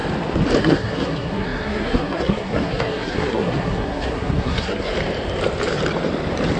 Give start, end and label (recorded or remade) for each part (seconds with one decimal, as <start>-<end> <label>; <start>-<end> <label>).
0.0-0.6 recorded; 0.6-4.9 remade; 4.9-6.6 recorded